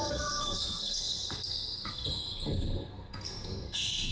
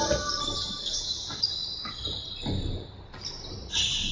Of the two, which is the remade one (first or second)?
first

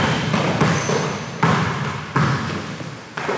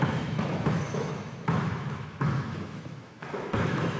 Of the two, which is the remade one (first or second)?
second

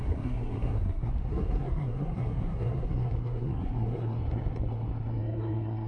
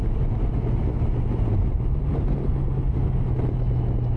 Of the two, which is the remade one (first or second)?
first